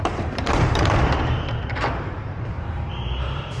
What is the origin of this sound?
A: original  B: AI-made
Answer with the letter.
B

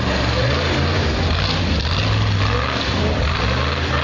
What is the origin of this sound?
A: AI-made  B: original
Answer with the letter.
B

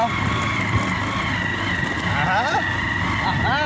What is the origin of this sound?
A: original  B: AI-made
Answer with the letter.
A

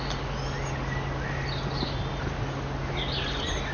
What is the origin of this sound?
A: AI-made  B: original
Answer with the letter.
B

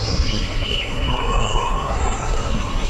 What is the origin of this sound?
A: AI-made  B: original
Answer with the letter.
A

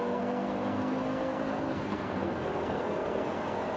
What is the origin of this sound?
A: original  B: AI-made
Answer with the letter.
B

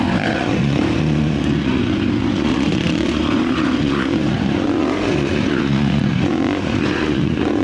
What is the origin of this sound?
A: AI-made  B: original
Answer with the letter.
A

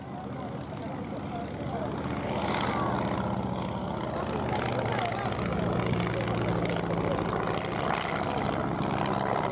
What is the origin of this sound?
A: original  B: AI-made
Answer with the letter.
A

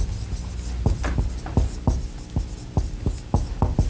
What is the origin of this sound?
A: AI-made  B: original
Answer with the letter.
B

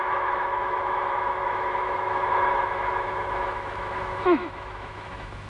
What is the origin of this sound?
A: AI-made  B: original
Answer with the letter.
A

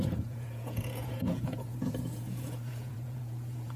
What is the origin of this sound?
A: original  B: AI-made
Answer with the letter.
B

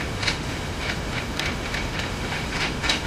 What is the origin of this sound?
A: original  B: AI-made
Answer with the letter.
B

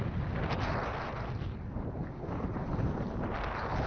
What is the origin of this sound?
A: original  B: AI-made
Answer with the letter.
A